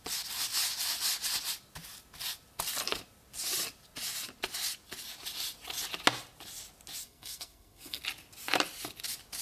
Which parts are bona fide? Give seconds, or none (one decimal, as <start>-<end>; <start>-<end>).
0.0-7.0; 8.0-9.4